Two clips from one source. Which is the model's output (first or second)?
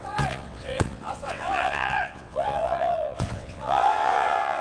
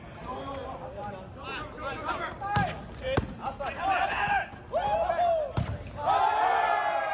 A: first